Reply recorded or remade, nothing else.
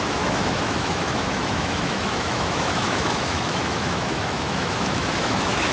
remade